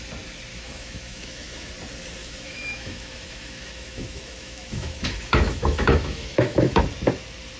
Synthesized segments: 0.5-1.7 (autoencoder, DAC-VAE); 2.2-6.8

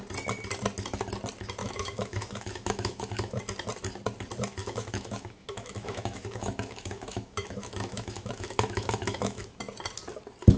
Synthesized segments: 1.6-3.4 (autoencoder, DAC-VAE); 4.6-9.6

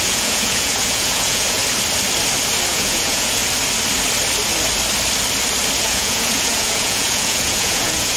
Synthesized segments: 0.0-1.6 (vocoder, Vocos); 2.7-3.4; 5.8-8.2

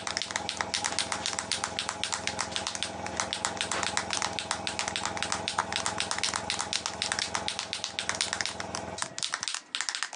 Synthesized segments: none

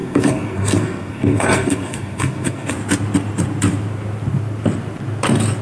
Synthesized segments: 0.0-2.7 (codec, SNAC)

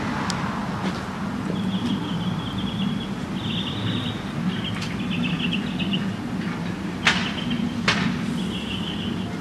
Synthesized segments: none

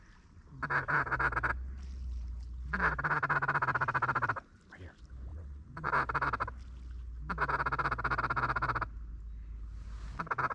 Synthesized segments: 5.3-5.9 (vocoder, WaveNeXt)